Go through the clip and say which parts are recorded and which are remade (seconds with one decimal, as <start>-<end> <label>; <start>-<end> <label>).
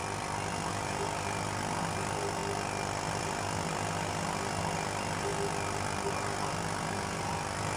0.0-7.8 recorded